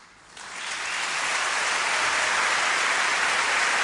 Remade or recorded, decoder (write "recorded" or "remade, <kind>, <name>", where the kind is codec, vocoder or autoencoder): recorded